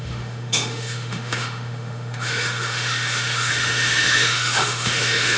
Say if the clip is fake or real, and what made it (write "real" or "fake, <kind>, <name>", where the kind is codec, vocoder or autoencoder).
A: fake, autoencoder, DAC-VAE